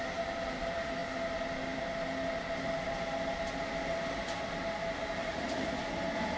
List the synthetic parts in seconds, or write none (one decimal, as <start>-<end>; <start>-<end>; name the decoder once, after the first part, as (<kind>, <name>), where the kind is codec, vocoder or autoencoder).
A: 5.2-5.8 (vocoder, Vocos)